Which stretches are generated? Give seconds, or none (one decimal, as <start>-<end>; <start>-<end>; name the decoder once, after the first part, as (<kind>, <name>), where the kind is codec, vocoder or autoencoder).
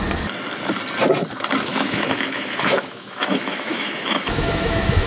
1.7-5.1 (autoencoder, DAC-VAE)